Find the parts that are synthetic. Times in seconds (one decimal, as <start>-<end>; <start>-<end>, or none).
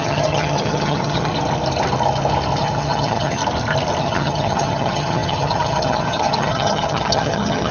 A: 0.0-1.3; 2.6-3.4; 4.0-7.7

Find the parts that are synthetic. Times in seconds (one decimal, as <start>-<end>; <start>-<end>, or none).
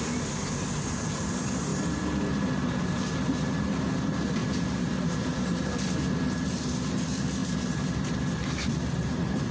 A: none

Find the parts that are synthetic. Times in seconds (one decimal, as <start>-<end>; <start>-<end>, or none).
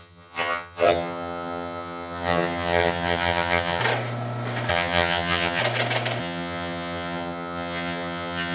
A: 0.0-3.8; 4.7-5.6; 6.2-8.5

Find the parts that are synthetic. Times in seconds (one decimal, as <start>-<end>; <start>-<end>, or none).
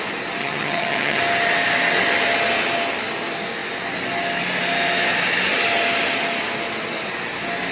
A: 0.4-1.2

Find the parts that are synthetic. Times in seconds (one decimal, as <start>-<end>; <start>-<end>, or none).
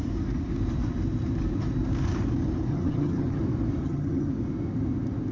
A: 2.7-3.4; 3.8-4.3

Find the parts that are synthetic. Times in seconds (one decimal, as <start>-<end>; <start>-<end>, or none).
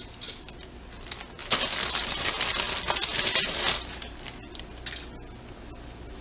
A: none